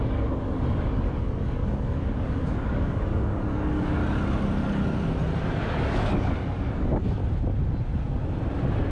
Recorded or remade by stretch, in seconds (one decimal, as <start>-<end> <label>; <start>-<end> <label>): 0.0-4.0 remade; 4.0-5.4 recorded; 5.4-7.2 remade; 7.2-8.9 recorded